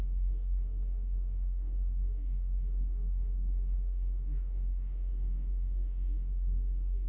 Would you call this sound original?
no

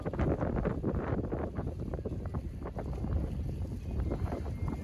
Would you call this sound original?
yes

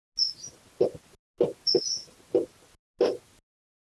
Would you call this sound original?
yes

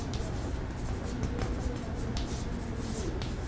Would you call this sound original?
yes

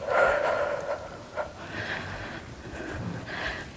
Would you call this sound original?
no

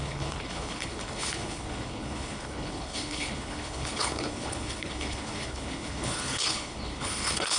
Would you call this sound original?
no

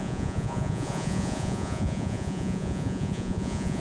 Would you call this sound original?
no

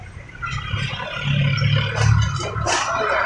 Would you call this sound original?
yes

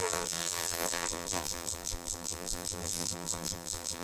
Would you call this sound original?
no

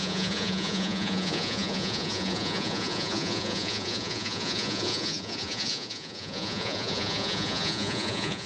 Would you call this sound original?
no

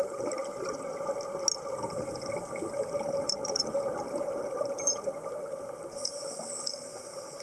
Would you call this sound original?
yes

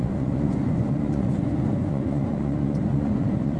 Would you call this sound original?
no